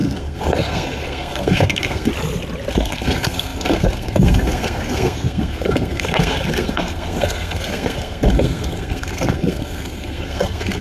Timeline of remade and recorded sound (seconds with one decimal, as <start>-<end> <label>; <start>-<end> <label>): 0.0-2.1 remade; 2.1-2.7 recorded; 2.7-10.8 remade